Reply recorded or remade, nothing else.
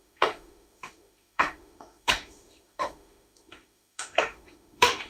remade